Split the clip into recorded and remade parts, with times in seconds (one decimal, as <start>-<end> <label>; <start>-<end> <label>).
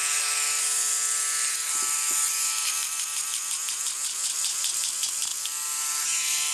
0.0-5.3 recorded; 5.3-6.0 remade; 6.0-6.5 recorded